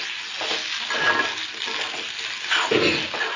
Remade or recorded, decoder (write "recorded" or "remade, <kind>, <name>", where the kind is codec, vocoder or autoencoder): recorded